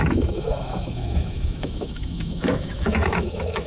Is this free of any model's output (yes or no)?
no